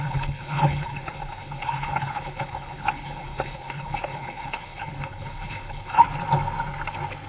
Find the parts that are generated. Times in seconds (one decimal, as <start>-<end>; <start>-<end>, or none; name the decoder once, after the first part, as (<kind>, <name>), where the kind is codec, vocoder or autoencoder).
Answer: 0.0-6.0 (codec, HILCodec)